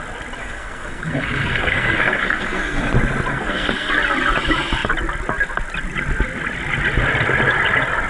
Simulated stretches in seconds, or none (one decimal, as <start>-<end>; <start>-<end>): 0.4-2.9; 3.3-3.9